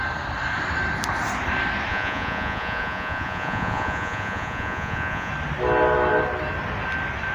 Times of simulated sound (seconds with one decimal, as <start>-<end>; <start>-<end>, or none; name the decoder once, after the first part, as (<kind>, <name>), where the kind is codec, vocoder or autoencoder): 1.9-5.3 (vocoder, Vocos)